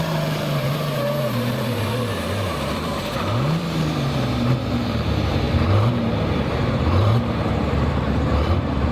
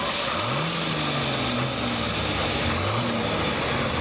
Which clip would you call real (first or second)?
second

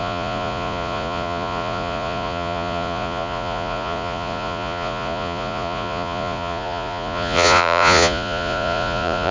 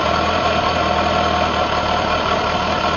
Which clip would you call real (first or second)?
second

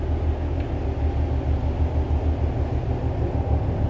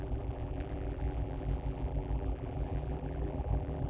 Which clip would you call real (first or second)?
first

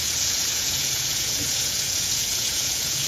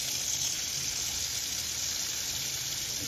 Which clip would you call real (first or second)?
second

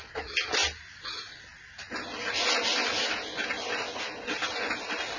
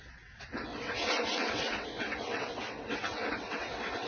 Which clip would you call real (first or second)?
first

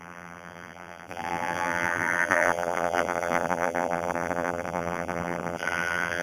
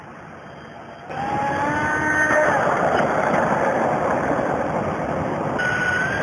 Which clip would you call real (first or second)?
second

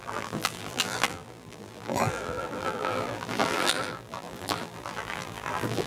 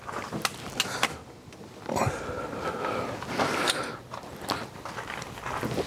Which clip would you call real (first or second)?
second